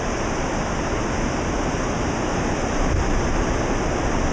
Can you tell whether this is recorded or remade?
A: recorded